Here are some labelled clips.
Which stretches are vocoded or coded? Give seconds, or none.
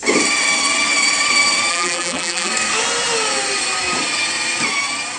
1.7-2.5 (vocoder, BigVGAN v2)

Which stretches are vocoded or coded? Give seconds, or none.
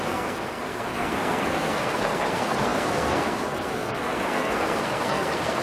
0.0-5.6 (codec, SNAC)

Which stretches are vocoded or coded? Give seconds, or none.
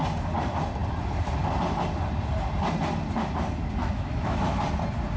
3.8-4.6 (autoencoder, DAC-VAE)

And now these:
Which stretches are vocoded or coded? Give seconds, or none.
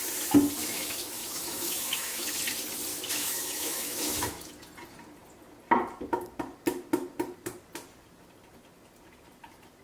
0.6-2.4 (autoencoder, DAC-VAE); 2.9-4.5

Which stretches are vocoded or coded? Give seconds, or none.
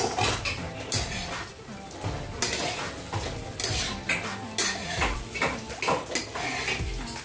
4.8-5.3 (vocoder, Vocos)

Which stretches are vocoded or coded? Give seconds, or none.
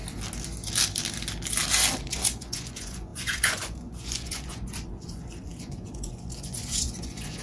2.0-7.4 (vocoder, Vocos)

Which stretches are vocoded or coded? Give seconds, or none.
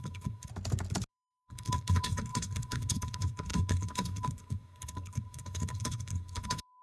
0.0-0.5 (codec, SNAC); 1.1-6.8